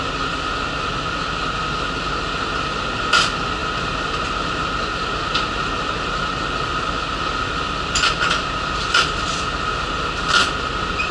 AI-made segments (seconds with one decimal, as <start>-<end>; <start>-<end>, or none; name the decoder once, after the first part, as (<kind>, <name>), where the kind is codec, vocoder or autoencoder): none